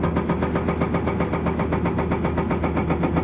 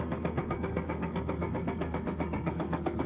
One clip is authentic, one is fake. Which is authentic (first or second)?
first